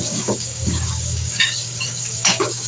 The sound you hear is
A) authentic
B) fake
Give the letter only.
B